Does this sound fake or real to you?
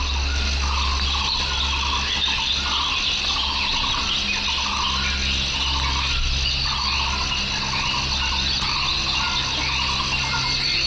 real